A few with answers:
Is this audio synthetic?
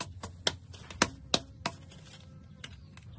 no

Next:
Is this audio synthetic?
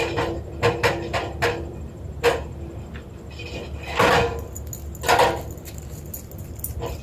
no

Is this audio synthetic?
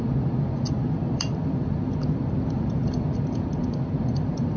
yes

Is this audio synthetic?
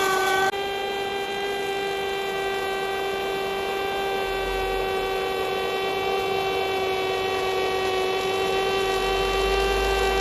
no